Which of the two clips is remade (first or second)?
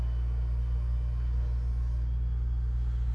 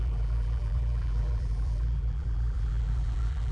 second